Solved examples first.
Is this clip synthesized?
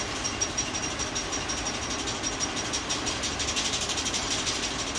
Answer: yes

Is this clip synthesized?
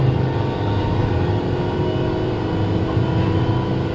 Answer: no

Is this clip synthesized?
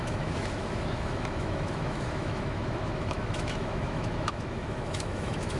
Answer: yes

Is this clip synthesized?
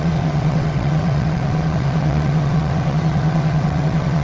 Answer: yes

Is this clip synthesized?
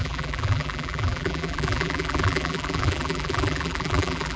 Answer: yes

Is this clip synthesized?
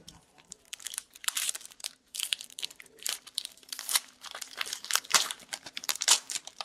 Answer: yes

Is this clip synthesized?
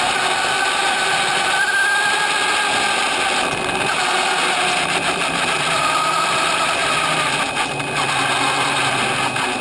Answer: no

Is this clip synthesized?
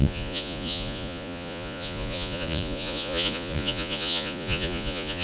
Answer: yes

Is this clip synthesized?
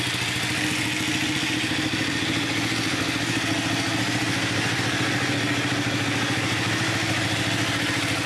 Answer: no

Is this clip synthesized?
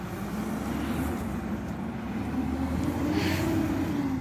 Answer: no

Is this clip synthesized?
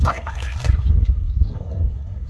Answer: yes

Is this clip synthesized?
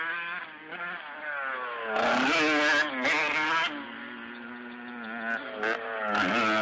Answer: no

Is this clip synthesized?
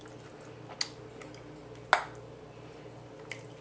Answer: no